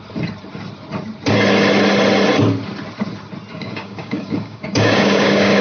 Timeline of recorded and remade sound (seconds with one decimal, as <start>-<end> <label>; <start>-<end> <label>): 0.0-3.5 recorded; 3.5-5.6 remade

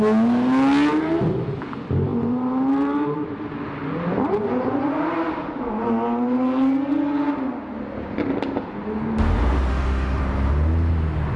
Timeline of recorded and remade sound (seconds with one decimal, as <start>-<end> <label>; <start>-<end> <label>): 0.0-9.7 recorded; 9.7-10.2 remade; 10.2-11.4 recorded

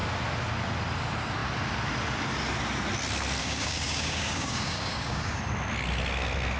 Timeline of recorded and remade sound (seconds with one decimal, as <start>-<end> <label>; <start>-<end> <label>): 0.0-3.4 recorded; 3.4-5.4 remade; 5.4-6.6 recorded

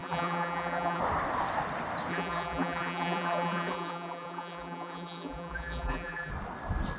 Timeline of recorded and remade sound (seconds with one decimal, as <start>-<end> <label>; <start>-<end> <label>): 0.0-1.0 remade; 1.0-2.1 recorded; 2.1-6.3 remade; 6.3-7.0 recorded